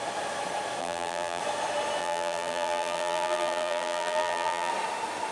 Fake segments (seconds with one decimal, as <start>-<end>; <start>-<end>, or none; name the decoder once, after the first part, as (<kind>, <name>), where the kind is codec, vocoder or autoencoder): 0.8-1.4 (vocoder, BigVGAN v2); 2.0-4.7